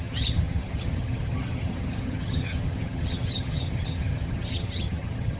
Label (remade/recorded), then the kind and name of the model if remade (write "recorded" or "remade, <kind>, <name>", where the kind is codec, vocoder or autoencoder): remade, vocoder, HiFi-GAN